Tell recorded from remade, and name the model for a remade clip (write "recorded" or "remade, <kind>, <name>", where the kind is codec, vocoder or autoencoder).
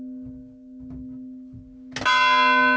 recorded